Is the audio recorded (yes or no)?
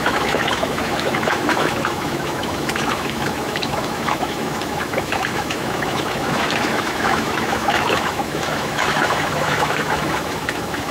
no